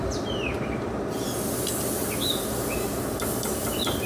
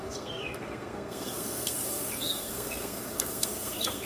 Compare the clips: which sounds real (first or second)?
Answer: first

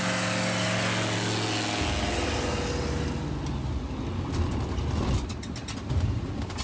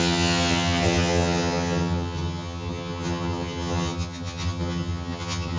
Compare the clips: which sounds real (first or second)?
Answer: first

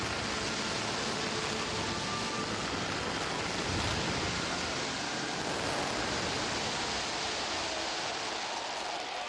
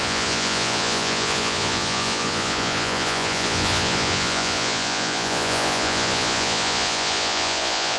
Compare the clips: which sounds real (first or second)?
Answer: first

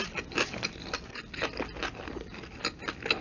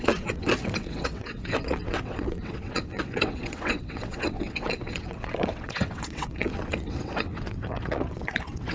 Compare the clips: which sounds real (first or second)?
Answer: first